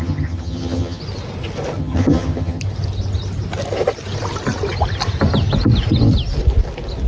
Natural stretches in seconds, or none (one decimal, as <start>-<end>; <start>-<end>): 1.0-1.8; 2.6-7.1